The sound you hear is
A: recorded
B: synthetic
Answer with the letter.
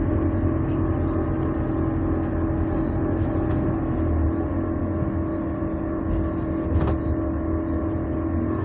A